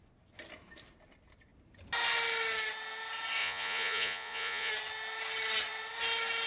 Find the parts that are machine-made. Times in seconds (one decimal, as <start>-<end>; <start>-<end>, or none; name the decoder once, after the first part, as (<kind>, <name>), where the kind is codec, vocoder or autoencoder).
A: 3.4-4.7 (vocoder, Vocos)